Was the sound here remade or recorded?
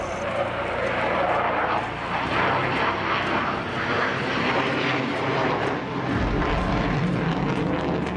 recorded